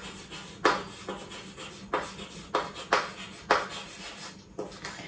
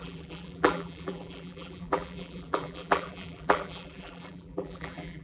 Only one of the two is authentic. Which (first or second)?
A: first